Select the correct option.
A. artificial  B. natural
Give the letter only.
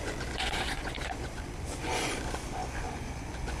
A